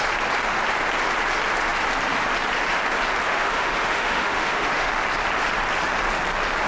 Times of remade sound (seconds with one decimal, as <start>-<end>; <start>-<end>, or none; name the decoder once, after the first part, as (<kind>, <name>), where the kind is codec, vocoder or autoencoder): 3.3-4.9 (autoencoder, DAC-VAE)